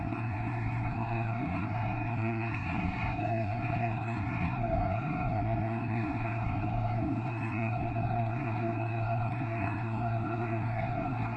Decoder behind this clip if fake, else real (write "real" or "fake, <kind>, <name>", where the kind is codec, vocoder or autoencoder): fake, codec, SNAC